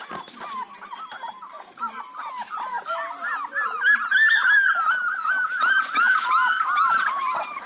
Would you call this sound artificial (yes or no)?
no